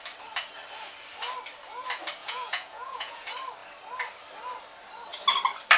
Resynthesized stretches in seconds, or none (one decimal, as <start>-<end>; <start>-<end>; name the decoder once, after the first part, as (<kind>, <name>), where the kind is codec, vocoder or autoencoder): 2.2-3.2 (vocoder, Vocos)